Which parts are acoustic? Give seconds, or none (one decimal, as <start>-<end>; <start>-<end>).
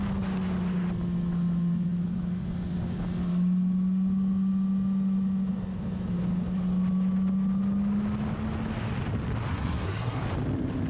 0.0-9.5; 10.2-10.9